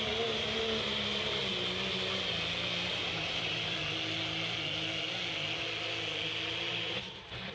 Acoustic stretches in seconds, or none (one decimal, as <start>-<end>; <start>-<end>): 1.4-2.9; 3.8-6.7